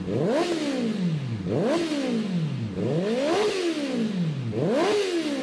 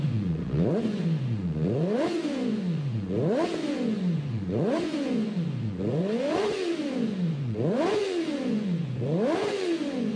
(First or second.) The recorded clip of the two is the first